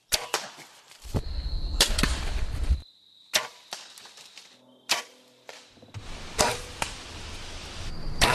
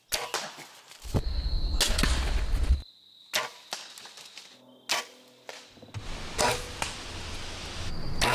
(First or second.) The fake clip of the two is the first